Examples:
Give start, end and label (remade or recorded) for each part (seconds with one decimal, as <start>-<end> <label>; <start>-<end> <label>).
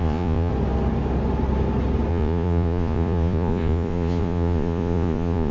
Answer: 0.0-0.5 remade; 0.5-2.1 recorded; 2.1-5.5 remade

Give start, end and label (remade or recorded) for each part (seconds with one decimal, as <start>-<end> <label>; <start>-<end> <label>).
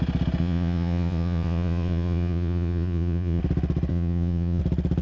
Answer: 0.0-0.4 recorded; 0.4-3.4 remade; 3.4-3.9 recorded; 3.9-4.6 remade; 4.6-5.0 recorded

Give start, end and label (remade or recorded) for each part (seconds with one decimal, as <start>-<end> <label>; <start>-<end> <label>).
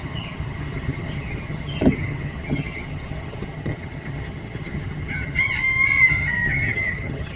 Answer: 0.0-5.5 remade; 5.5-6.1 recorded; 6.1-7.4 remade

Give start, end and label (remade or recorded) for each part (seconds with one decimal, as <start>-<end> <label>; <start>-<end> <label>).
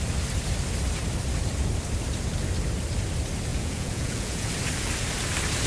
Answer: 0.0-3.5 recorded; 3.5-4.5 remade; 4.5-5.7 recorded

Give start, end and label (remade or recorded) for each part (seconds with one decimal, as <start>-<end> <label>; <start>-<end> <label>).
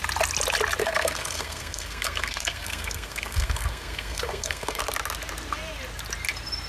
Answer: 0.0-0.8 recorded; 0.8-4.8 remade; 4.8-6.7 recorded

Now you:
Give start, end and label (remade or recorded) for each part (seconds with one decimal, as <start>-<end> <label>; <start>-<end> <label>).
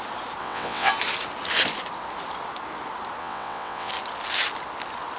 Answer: 0.0-0.4 recorded; 0.4-0.9 remade; 0.9-3.2 recorded; 3.2-3.9 remade; 3.9-5.2 recorded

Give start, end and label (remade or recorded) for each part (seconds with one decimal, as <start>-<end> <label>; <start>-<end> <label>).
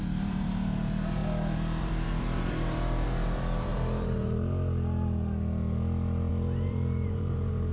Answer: 0.0-1.2 remade; 1.2-1.8 recorded; 1.8-3.7 remade; 3.7-6.3 recorded; 6.3-7.7 remade